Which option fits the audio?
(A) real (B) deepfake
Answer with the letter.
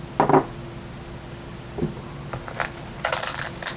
A